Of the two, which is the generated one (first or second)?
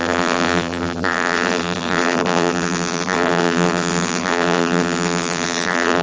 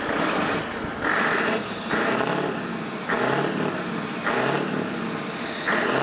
first